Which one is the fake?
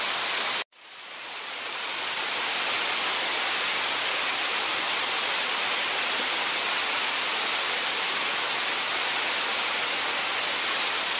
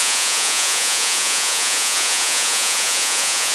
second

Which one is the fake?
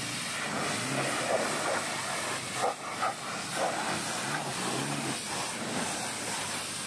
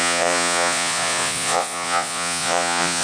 second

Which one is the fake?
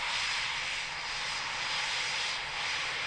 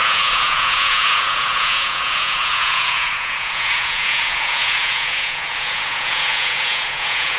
second